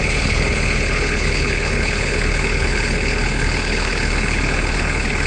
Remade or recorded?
remade